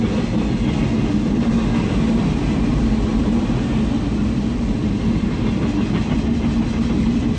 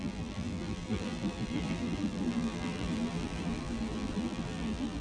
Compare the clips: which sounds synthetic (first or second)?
second